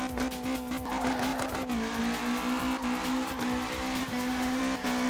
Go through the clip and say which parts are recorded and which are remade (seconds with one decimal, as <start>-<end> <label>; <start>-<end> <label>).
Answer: 0.0-4.0 recorded; 4.0-4.6 remade; 4.6-5.1 recorded